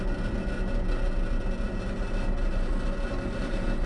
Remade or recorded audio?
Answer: recorded